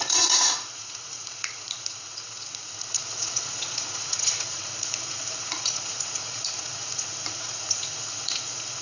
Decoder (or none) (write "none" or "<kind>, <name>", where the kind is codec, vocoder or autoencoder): vocoder, Vocos